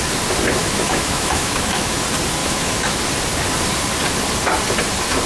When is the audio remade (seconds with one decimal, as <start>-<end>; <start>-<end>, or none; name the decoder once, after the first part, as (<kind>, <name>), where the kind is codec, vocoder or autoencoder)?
0.6-2.0 (autoencoder, DAC-VAE); 2.4-3.0